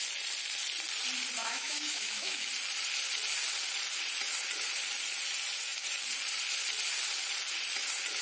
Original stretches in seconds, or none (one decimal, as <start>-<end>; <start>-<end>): 0.0-1.4; 2.5-8.2